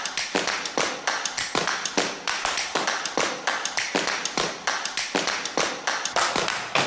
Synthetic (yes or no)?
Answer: no